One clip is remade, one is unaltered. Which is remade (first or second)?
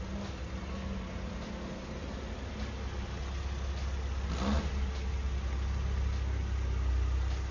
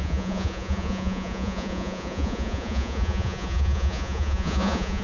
second